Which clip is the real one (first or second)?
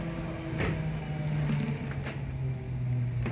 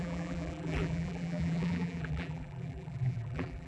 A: first